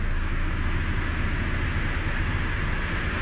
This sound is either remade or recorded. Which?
recorded